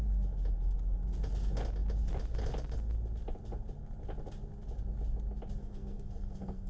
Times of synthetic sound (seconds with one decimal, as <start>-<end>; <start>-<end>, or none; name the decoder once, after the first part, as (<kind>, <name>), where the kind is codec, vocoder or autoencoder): 5.6-6.7 (codec, SNAC)